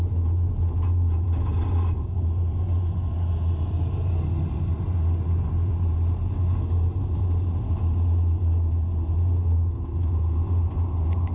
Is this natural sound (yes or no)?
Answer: yes